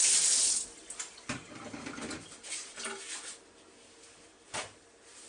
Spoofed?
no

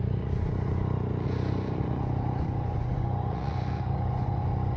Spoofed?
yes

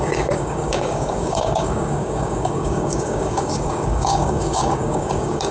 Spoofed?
yes